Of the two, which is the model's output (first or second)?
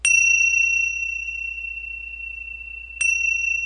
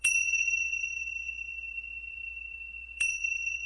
second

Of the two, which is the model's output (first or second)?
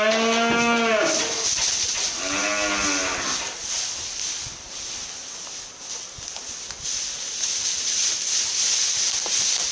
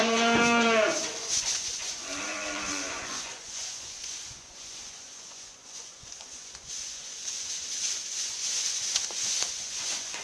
second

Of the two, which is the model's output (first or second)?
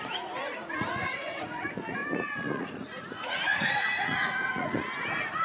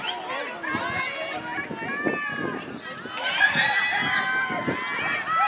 first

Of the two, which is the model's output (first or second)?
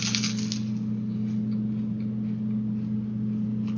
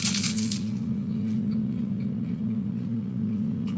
second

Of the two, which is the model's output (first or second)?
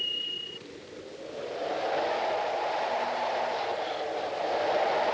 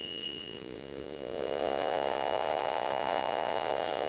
second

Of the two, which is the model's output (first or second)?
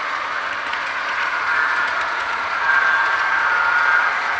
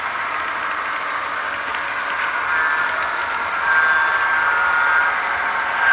first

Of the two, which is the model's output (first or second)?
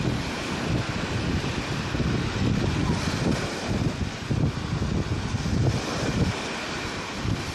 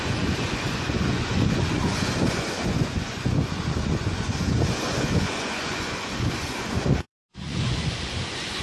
second